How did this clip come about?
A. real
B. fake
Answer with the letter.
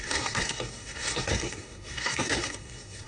B